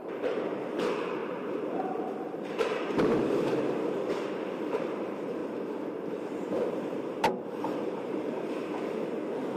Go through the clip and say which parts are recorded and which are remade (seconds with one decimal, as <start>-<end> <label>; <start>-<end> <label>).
0.0-1.2 remade; 1.2-1.9 recorded; 1.9-5.4 remade; 5.4-6.1 recorded; 6.1-8.6 remade; 8.6-9.6 recorded